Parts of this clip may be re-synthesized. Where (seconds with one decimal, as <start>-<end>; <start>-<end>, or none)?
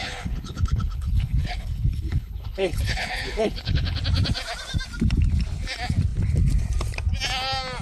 0.0-4.0